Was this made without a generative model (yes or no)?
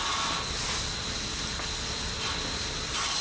yes